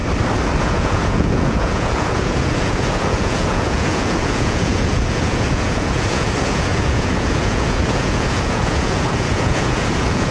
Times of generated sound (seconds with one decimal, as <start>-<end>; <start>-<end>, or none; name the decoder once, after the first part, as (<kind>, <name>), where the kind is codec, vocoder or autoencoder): 0.6-10.3 (vocoder, Vocos)